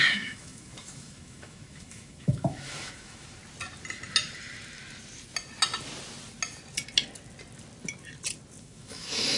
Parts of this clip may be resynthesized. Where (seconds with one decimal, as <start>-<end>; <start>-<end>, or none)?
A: 0.0-3.4; 8.6-9.4

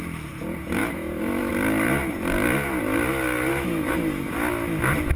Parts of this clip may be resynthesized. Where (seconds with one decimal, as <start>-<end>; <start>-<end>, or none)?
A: 0.8-1.5; 3.5-4.3

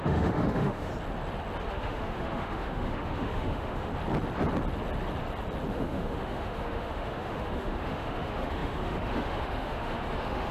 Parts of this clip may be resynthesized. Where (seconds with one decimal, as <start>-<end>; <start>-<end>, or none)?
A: 0.0-0.9; 1.7-3.9; 5.7-10.5

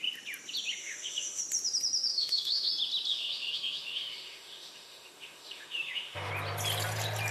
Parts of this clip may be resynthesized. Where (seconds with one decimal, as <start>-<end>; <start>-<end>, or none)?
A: 0.8-1.4; 2.1-2.7; 3.1-6.3